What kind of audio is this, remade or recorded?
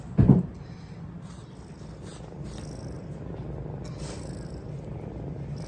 recorded